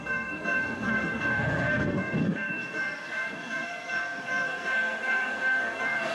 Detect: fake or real fake